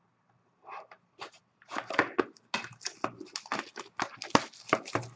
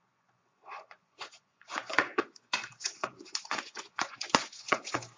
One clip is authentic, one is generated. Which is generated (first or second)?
second